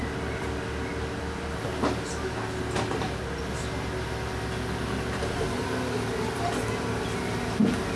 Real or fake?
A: real